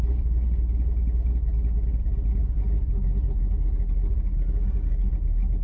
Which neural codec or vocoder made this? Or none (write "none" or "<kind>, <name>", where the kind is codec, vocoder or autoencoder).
none